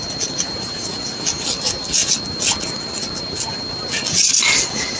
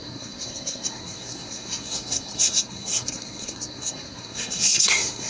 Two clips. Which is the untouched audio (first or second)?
first